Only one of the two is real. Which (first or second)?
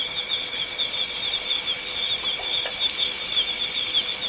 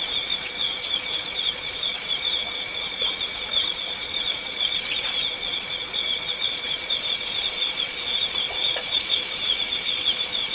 first